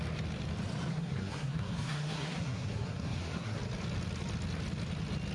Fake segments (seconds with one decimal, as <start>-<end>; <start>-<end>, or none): 0.9-3.6